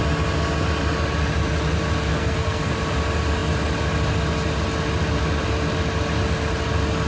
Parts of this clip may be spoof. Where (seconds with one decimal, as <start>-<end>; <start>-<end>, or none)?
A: 2.1-2.7

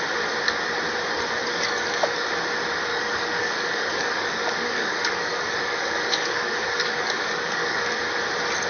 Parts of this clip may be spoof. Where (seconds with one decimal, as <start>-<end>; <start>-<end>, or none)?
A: 1.4-2.3; 2.9-8.0

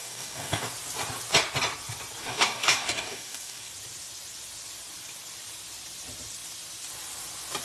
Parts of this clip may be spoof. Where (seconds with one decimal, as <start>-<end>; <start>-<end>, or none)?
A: 0.0-0.7; 2.2-3.7

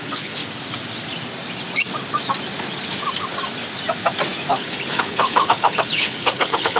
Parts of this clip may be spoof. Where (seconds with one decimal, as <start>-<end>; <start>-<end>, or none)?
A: 0.0-0.4; 4.5-6.8

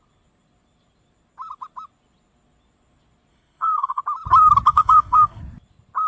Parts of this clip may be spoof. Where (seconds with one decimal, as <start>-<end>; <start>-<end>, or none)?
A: 3.3-4.0; 4.7-5.4

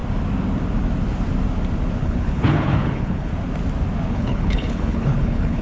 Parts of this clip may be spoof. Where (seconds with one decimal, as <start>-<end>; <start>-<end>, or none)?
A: 2.0-3.3; 4.1-5.6

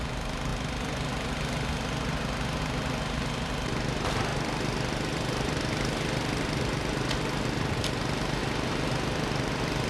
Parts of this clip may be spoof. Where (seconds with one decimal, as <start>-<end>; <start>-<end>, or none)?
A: 4.3-6.8; 8.4-9.9